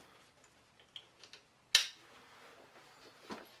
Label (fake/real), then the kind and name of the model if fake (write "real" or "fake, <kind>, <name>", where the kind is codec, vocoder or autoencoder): real